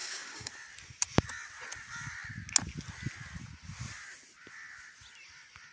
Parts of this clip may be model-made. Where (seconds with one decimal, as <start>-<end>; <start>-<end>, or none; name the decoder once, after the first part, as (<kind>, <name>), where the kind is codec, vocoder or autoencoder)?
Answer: 0.0-0.5 (codec, DAC)